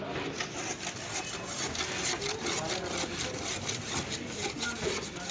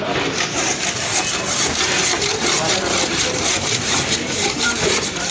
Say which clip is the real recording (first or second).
first